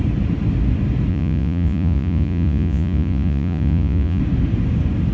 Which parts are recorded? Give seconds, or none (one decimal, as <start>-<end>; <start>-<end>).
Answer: 0.0-1.1; 4.2-5.1